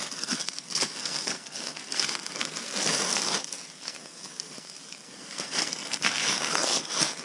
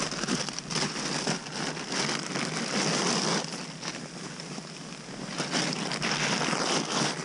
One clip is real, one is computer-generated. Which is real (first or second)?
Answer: second